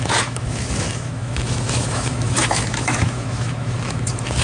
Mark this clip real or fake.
fake